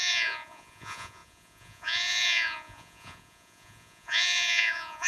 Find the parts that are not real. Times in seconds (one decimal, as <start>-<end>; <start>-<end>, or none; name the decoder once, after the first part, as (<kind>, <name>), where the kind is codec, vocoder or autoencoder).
0.0-5.1 (vocoder, Vocos)